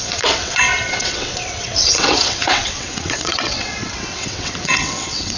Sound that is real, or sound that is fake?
fake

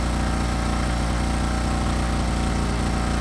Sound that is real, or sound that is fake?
real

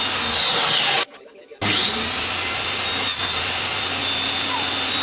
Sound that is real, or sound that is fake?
real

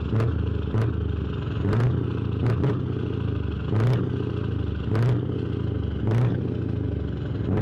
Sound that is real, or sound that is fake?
real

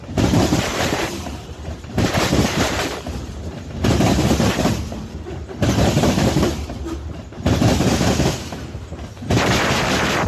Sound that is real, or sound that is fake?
fake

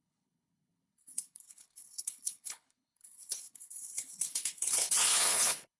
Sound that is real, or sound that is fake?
fake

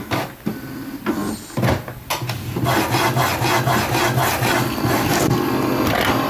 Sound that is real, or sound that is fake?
real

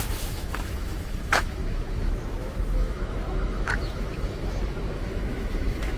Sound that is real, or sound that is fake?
fake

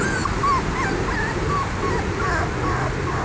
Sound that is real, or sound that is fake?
real